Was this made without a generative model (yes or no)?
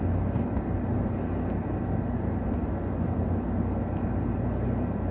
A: yes